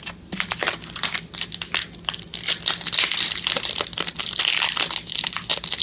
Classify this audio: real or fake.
real